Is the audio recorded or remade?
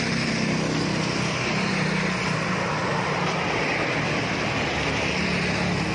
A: recorded